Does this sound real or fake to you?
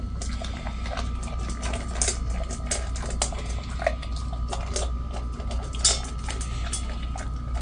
real